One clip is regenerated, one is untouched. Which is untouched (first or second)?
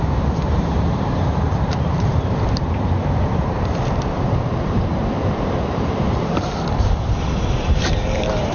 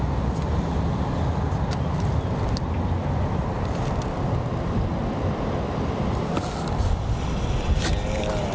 second